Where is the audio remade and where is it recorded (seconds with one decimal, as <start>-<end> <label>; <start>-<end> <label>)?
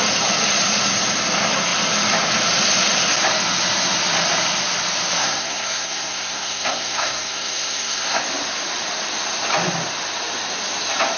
0.0-5.2 recorded; 5.2-8.2 remade; 8.2-11.2 recorded